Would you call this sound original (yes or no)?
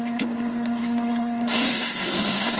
no